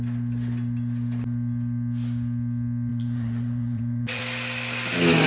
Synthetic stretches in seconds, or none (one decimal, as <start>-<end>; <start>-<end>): 2.9-4.2